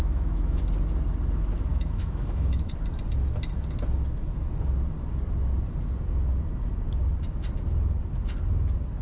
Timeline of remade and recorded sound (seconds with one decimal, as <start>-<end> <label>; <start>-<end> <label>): 0.0-0.6 remade; 0.6-1.7 recorded; 1.7-2.7 remade; 2.7-9.0 recorded